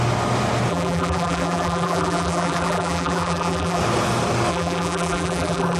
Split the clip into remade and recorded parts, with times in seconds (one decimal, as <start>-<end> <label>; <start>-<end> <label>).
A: 0.0-0.7 recorded; 0.7-3.8 remade; 3.8-4.5 recorded; 4.5-5.8 remade